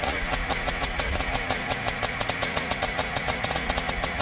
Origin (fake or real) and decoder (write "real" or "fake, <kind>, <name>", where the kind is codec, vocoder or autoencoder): fake, vocoder, Vocos